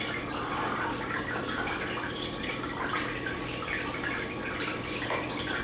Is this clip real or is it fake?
real